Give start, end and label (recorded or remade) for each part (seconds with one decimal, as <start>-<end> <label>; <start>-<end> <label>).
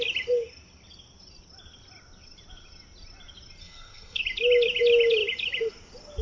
0.0-3.6 recorded; 3.6-4.2 remade; 4.2-6.2 recorded